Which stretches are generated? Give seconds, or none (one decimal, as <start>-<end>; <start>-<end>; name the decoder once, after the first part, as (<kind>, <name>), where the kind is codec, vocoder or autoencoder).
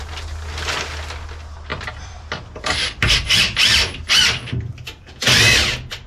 1.7-5.2 (vocoder, BigVGAN v2)